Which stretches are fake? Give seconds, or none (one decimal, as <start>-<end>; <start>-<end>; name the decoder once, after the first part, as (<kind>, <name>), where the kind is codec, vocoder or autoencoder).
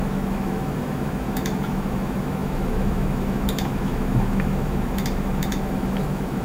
0.0-6.4 (autoencoder, DAC-VAE)